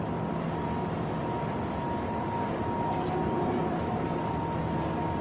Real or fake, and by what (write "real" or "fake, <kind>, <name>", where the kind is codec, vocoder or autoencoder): real